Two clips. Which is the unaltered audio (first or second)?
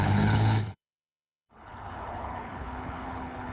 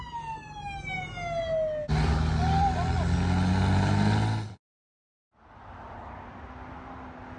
second